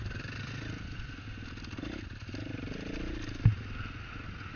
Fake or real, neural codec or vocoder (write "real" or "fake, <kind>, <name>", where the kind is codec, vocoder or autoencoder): real